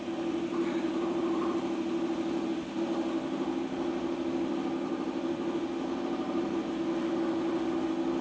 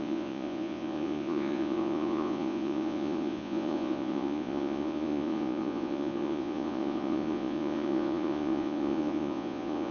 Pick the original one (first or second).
first